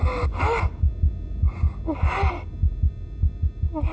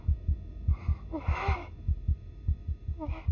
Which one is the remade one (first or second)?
second